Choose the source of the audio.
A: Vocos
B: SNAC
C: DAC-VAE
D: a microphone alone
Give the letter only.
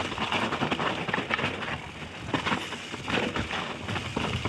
D